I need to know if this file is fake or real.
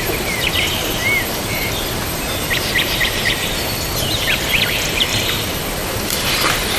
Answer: fake